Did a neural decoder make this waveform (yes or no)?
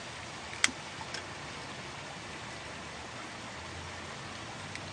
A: no